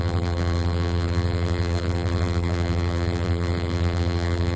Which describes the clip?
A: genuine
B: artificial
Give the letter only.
B